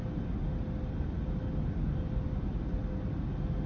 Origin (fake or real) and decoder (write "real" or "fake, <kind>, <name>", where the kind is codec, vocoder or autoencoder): real